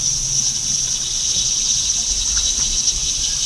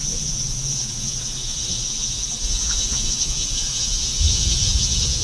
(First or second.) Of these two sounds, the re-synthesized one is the second